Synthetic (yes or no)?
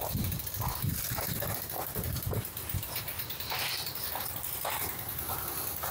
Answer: yes